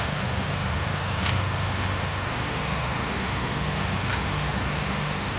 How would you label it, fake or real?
fake